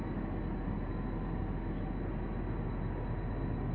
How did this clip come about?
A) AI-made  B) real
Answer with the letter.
B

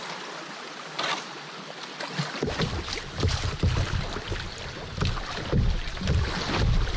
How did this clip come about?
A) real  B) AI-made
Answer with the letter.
A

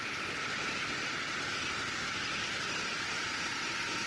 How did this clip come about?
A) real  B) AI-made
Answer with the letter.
B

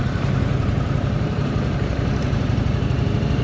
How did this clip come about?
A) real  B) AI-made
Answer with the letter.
B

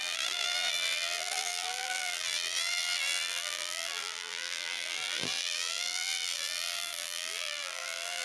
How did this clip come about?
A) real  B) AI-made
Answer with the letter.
B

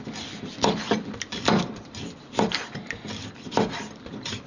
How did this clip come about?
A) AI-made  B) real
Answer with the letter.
A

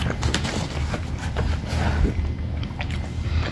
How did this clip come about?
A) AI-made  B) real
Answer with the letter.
B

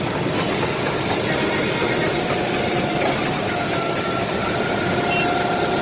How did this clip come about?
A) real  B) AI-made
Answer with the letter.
A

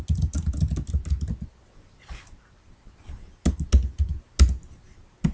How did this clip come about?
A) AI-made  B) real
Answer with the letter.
B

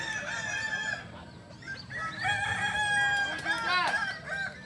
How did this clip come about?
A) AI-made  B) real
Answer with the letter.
B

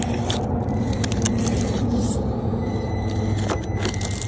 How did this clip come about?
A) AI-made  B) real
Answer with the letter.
B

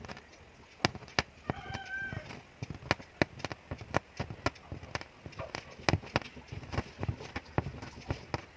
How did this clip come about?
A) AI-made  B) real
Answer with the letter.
B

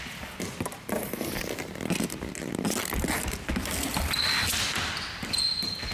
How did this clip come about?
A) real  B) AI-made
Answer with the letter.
A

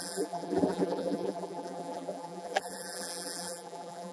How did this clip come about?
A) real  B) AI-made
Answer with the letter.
B